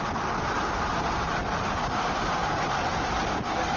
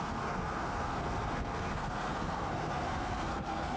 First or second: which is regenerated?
second